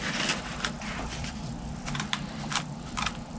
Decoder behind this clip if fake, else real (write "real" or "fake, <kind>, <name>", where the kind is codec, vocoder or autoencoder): fake, vocoder, BigVGAN v2